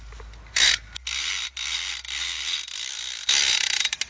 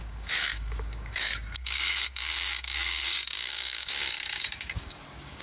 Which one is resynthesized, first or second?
second